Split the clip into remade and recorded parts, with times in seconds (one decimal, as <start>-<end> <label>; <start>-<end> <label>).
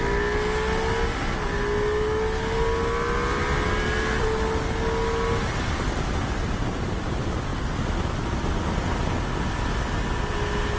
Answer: 0.0-10.8 recorded